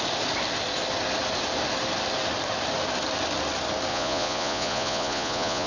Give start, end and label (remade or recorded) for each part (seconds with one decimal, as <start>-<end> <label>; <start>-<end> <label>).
0.0-3.9 recorded; 3.9-5.7 remade